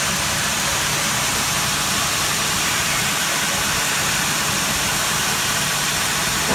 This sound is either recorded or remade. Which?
remade